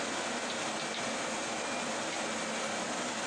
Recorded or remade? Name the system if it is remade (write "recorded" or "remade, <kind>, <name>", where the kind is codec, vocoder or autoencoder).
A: recorded